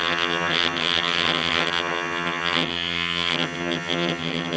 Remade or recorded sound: remade